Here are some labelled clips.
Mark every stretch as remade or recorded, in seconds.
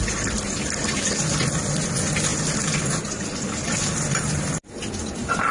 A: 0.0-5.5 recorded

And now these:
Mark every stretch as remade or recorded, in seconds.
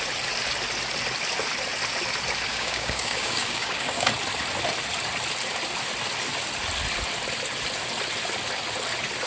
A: 0.0-2.5 recorded; 2.5-4.1 remade; 4.1-9.3 recorded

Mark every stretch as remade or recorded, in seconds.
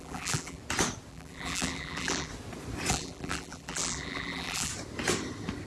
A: 0.0-0.6 remade; 0.6-1.1 recorded; 1.1-2.3 remade; 2.3-2.9 recorded; 2.9-4.7 remade; 4.7-5.7 recorded